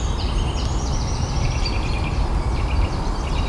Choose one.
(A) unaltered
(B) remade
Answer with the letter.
A